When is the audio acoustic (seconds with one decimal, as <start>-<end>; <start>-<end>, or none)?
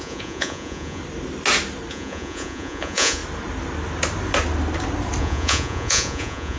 1.0-1.9; 3.2-5.2